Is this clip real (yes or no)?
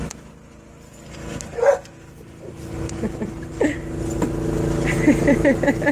yes